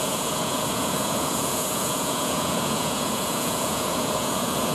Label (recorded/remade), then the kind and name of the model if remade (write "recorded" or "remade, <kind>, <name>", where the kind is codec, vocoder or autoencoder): remade, vocoder, Vocos